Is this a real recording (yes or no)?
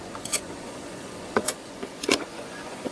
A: no